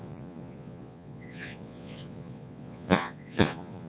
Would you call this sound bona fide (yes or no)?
no